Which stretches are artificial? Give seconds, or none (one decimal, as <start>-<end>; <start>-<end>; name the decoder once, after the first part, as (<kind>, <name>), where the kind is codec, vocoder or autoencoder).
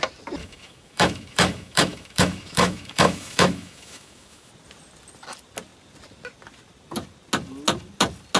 0.4-4.5 (autoencoder, DAC-VAE)